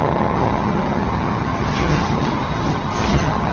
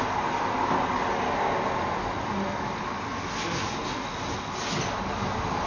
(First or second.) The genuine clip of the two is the second